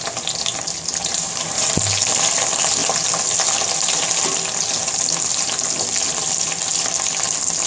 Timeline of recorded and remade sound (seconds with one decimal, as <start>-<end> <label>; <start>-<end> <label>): 0.0-1.0 recorded; 1.0-1.7 remade; 1.7-7.7 recorded